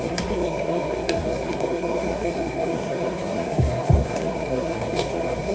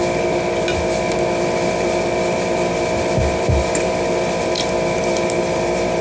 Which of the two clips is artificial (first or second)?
first